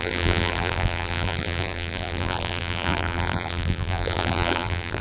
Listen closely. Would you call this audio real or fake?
fake